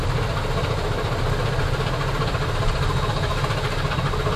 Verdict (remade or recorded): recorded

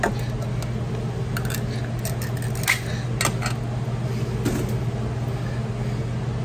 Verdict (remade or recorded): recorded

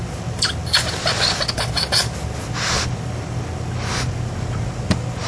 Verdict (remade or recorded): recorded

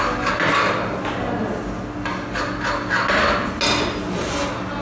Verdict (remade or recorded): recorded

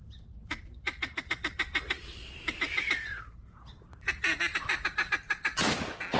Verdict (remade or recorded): recorded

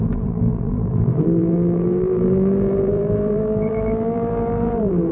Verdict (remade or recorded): remade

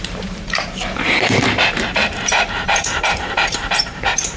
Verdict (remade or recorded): remade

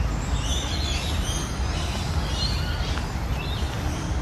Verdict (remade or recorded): recorded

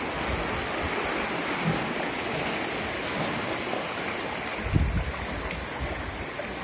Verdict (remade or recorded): recorded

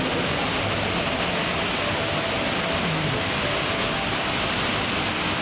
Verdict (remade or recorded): recorded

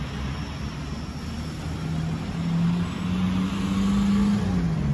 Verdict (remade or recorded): recorded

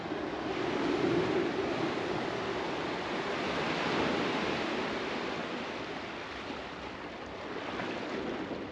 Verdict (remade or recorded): recorded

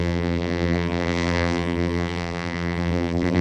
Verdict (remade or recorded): remade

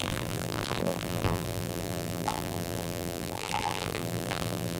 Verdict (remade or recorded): remade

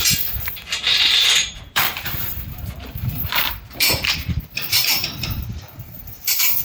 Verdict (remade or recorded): remade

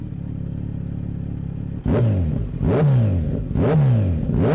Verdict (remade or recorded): recorded